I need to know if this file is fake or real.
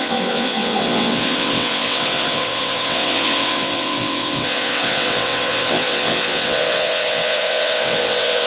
fake